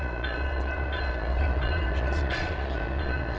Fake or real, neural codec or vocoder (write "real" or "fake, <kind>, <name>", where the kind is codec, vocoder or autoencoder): fake, vocoder, Vocos